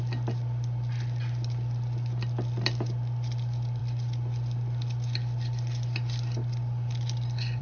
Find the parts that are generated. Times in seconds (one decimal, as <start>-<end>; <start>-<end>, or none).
none